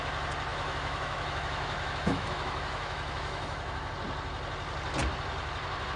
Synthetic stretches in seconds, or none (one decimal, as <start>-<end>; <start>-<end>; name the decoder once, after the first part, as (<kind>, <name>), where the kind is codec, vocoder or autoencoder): 0.5-3.9 (autoencoder, DAC-VAE)